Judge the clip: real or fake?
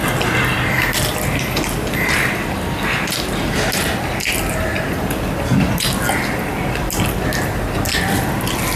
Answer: real